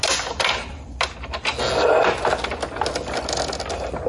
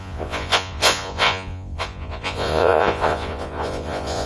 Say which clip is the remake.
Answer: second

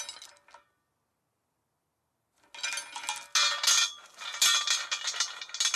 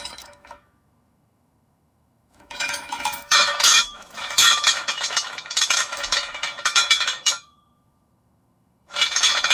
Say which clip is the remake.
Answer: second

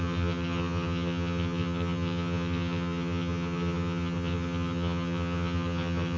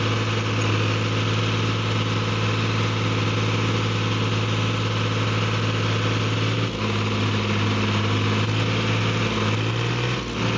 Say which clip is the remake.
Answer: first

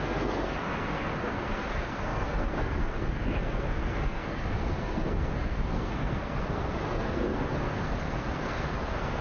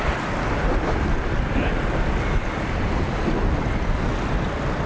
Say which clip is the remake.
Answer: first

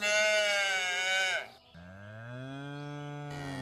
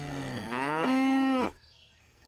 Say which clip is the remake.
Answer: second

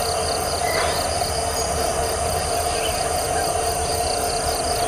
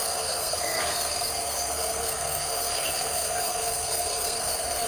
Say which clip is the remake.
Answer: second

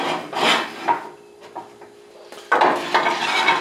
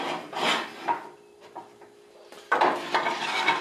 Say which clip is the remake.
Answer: second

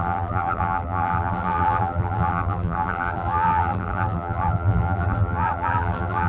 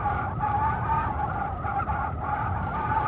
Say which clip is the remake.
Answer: first